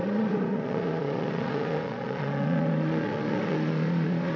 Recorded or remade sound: remade